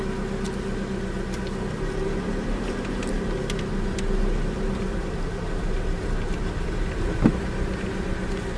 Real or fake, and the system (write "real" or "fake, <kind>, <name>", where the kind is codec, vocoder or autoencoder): real